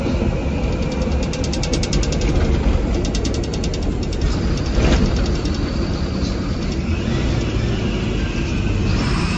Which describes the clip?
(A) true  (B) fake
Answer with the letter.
A